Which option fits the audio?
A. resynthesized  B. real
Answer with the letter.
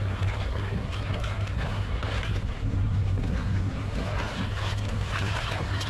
A